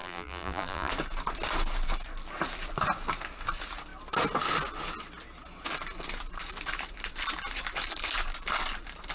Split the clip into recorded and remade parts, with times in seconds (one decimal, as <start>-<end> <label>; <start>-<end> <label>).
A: 0.0-0.9 remade; 0.9-9.1 recorded